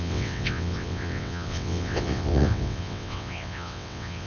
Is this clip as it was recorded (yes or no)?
no